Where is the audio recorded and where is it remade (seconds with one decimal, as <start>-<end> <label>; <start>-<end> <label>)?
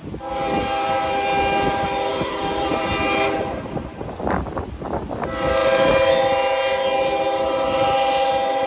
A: 0.0-2.1 recorded; 2.1-4.1 remade; 4.1-5.6 recorded; 5.6-6.1 remade; 6.1-8.7 recorded